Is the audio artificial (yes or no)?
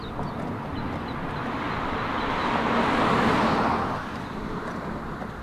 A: no